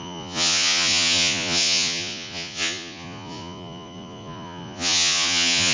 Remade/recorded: remade